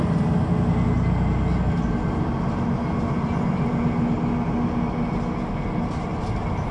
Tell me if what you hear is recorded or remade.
recorded